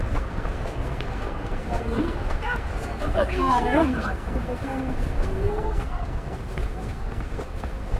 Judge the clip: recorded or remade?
remade